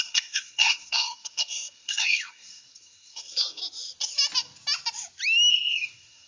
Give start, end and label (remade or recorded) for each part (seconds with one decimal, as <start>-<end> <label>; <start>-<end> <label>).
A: 0.0-3.6 remade; 3.6-5.5 recorded; 5.5-6.3 remade